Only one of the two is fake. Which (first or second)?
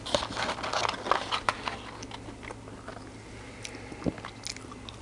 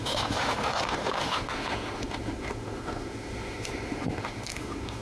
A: second